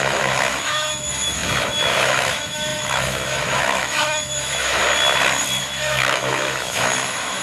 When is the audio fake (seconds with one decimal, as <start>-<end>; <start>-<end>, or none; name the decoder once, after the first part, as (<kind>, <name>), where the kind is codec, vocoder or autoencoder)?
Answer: 0.0-4.8 (autoencoder, DAC-VAE); 5.6-7.4